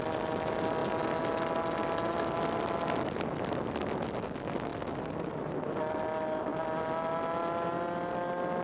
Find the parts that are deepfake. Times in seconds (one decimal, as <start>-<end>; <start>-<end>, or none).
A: none